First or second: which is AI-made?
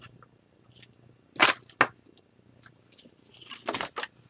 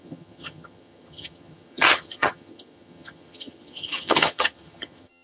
second